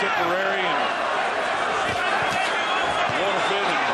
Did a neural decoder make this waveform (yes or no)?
no